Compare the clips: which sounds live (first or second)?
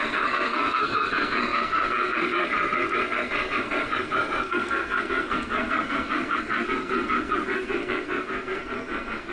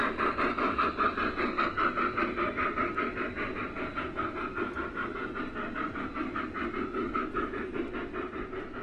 second